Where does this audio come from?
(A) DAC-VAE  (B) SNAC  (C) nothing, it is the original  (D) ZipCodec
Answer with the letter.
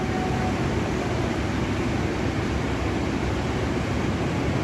C